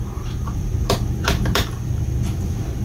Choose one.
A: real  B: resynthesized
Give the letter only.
B